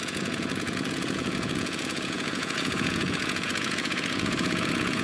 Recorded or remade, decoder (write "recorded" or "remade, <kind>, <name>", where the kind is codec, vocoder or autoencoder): remade, vocoder, Vocos